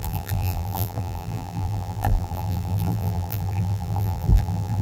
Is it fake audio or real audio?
fake